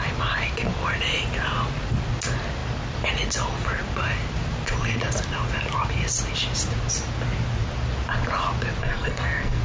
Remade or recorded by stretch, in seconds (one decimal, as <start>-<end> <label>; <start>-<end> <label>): 0.0-8.8 recorded; 8.8-9.6 remade